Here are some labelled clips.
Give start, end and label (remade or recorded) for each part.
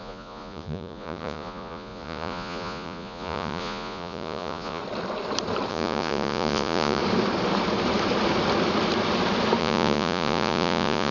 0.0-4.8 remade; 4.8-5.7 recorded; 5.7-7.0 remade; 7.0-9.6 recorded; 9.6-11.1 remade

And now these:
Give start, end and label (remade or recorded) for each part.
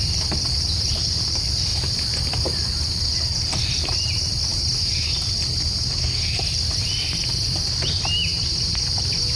0.0-9.4 recorded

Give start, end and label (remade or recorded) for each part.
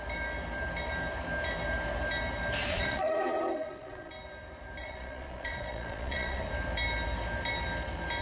0.0-2.7 recorded; 2.7-4.1 remade; 4.1-4.8 recorded; 4.8-6.5 remade; 6.5-8.2 recorded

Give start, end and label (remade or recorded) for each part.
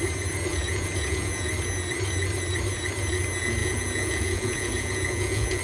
0.0-0.5 recorded; 0.5-1.5 remade; 1.5-3.6 recorded; 3.6-5.6 remade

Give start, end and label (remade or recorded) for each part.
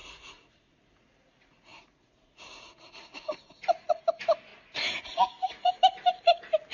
0.0-4.0 remade; 4.0-4.5 recorded; 4.5-5.7 remade; 5.7-6.7 recorded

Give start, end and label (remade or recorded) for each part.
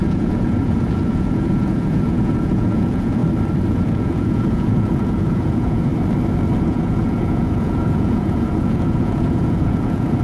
0.0-3.2 remade; 3.2-3.7 recorded; 3.7-5.9 remade; 5.9-6.6 recorded; 6.6-10.2 remade